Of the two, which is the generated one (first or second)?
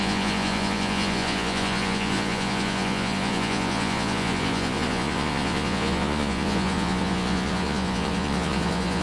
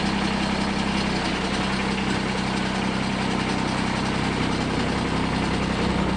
first